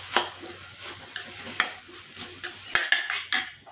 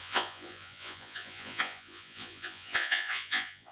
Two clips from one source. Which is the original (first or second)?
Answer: first